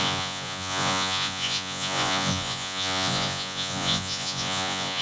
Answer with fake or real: fake